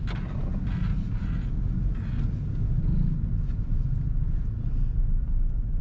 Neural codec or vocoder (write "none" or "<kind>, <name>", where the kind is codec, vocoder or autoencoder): none